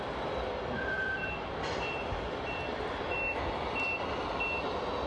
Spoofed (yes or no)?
no